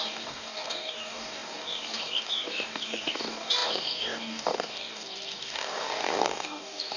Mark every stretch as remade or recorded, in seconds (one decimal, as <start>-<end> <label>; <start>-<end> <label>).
0.0-7.0 remade